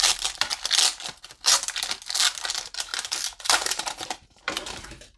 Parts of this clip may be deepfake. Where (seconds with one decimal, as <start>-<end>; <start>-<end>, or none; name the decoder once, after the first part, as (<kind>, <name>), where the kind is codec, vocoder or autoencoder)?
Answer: 0.0-0.5 (vocoder, BigVGAN v2); 2.5-2.9; 3.4-5.2